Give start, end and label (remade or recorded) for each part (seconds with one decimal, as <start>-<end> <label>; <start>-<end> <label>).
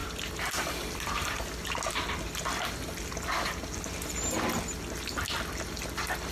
0.0-6.3 recorded